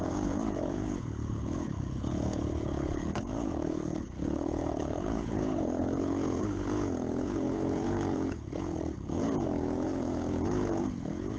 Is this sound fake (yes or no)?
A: yes